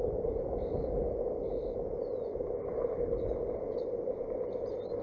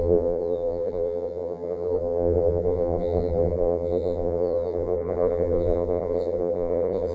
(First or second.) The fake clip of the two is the second